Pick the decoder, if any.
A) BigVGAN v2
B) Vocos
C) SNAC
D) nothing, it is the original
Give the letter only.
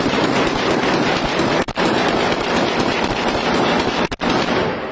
D